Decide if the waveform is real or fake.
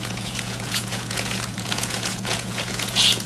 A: fake